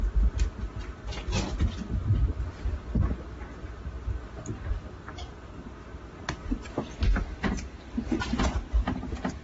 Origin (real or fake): real